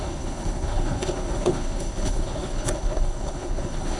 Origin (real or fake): fake